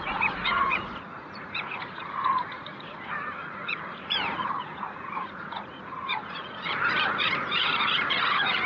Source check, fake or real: fake